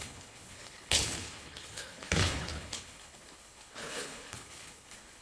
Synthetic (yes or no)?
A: yes